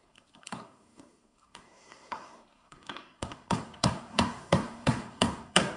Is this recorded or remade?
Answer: remade